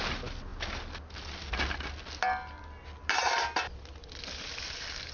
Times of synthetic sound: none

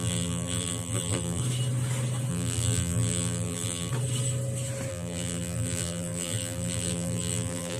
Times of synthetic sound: 0.0-1.4 (vocoder, BigVGAN v2); 2.3-3.9; 4.9-7.8

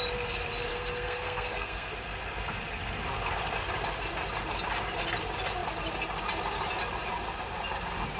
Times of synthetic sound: 0.7-1.9 (codec, SNAC)

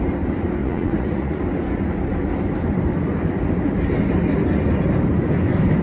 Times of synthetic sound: 0.6-1.4 (vocoder, Vocos)

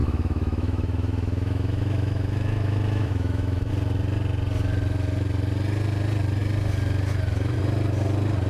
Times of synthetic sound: 0.0-3.7 (autoencoder, DAC-VAE)